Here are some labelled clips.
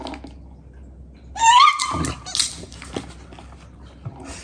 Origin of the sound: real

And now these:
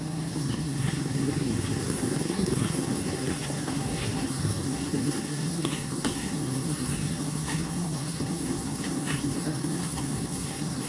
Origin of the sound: fake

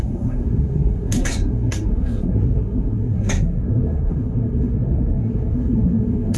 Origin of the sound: fake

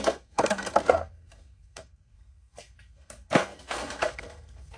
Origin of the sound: fake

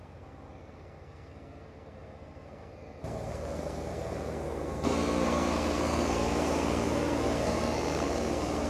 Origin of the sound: fake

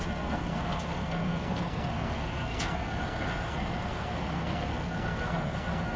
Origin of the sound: fake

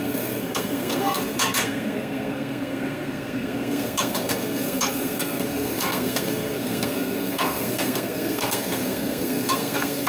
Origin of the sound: fake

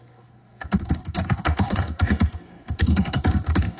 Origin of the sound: fake